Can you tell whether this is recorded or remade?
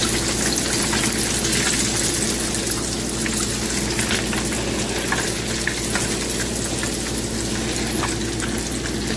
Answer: recorded